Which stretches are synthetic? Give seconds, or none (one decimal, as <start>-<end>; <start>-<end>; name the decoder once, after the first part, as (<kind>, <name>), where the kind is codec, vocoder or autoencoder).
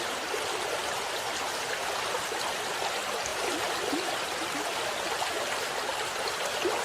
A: none